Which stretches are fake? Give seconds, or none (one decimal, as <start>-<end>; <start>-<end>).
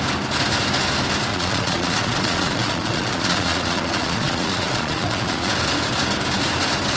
1.3-5.5